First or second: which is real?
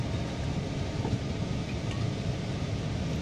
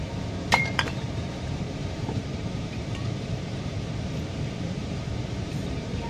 first